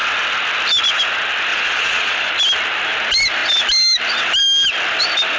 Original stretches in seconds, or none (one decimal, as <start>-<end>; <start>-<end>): 0.0-1.5; 2.3-5.4